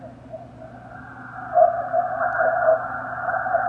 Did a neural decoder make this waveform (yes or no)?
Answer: no